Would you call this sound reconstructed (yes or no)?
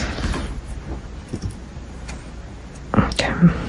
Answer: no